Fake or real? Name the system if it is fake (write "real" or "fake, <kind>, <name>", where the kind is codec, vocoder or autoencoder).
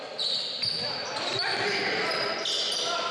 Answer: real